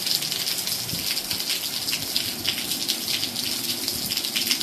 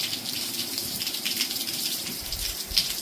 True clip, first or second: first